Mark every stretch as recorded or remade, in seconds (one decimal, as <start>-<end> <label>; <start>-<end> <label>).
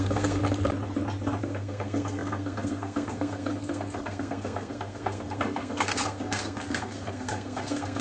0.0-0.4 remade; 0.4-1.4 recorded; 1.4-8.0 remade